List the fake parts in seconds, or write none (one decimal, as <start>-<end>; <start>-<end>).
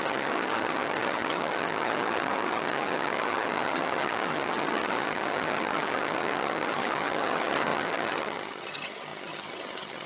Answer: 0.0-10.1